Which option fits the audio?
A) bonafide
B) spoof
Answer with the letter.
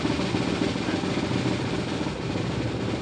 A